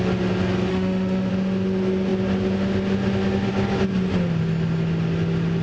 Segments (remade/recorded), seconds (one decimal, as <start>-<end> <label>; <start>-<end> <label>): 0.0-0.7 recorded; 0.7-1.3 remade; 1.3-5.6 recorded